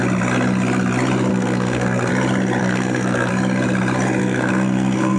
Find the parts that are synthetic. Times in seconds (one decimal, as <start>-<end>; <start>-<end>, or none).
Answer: 1.3-2.1; 2.6-3.3; 4.2-5.2